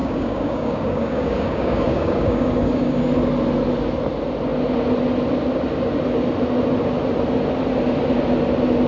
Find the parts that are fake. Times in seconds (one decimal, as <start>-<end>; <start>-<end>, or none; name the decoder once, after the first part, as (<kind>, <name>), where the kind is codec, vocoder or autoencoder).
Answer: 0.0-3.0 (codec, DAC)